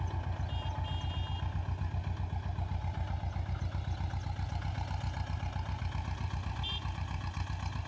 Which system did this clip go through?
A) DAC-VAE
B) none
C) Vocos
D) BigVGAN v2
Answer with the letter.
B